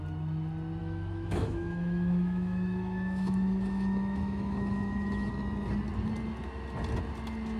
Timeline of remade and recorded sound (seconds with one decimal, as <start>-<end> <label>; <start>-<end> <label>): 0.0-0.8 recorded; 0.8-5.3 remade; 5.3-7.6 recorded